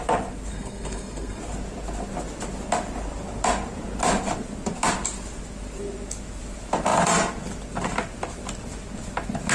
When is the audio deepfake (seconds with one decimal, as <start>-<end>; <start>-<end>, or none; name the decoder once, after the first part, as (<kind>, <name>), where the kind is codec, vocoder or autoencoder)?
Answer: 0.5-1.4 (codec, SNAC)